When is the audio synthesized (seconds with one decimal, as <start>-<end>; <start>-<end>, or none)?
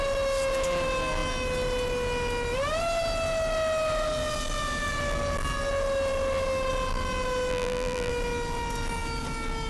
7.5-8.1